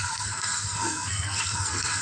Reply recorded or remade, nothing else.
remade